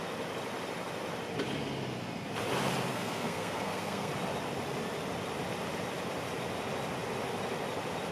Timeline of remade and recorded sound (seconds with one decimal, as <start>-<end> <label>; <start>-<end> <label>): 0.0-2.9 recorded; 2.9-4.1 remade; 4.1-8.1 recorded